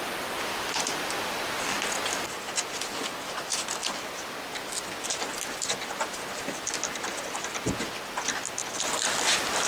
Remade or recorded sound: recorded